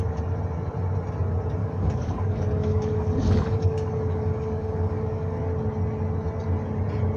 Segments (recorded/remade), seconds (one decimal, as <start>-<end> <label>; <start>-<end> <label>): 0.0-1.6 recorded; 1.6-5.4 remade; 5.4-7.2 recorded